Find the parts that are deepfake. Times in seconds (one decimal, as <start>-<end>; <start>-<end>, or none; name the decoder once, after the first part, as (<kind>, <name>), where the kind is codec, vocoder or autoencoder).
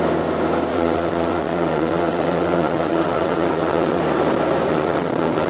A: 0.7-4.0 (vocoder, WaveNeXt); 4.7-5.5